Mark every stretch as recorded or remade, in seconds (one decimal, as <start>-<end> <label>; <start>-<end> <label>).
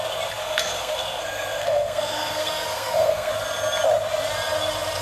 0.0-0.4 recorded; 0.4-3.3 remade; 3.3-5.0 recorded